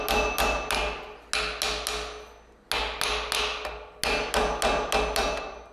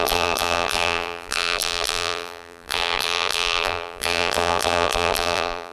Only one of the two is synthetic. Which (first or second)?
second